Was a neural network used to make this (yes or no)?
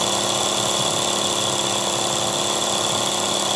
no